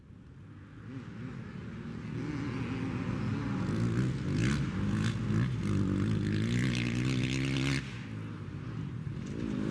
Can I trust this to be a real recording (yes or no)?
yes